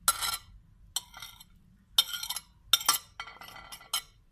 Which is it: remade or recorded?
recorded